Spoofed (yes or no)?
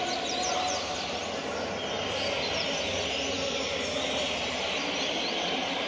no